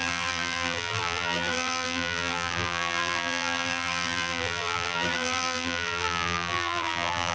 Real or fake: fake